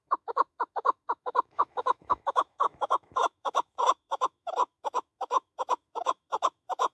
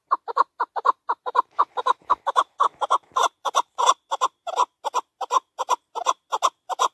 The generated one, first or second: first